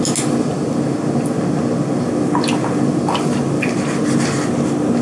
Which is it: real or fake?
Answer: real